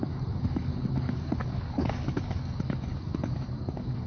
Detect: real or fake fake